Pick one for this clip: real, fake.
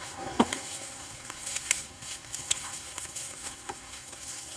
fake